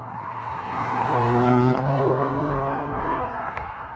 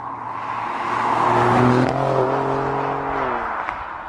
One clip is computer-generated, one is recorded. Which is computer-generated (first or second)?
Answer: first